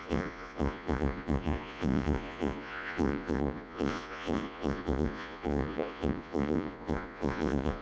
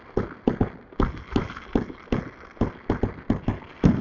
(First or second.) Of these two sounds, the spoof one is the first